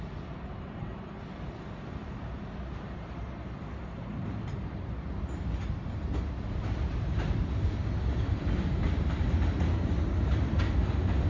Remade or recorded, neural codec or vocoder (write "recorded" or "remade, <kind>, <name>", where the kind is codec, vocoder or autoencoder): recorded